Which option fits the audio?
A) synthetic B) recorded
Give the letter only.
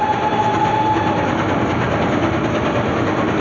B